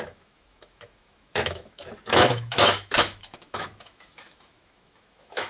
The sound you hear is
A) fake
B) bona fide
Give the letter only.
A